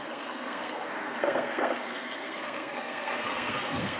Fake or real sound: fake